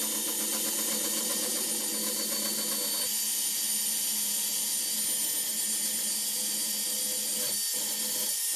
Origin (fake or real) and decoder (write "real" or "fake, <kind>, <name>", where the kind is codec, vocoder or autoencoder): real